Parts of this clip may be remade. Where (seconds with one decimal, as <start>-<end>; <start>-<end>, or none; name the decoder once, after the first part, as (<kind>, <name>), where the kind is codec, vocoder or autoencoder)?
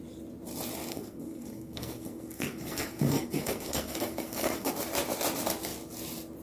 0.9-4.7 (codec, SNAC)